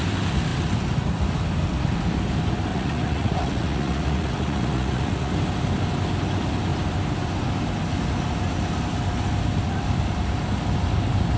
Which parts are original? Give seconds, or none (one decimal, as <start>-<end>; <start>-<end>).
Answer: 0.0-2.7; 5.3-11.4